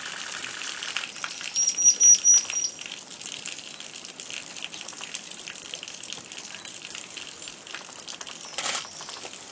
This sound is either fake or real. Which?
real